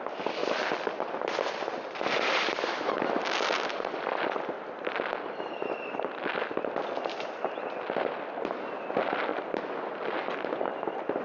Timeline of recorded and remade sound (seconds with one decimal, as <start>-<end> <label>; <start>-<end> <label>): 0.0-0.4 recorded; 0.4-4.9 remade; 4.9-9.3 recorded; 9.3-11.2 remade